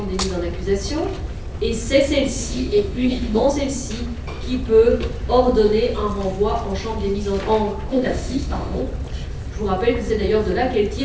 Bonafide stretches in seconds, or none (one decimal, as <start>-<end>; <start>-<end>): 0.0-2.4; 3.5-7.9; 8.8-11.0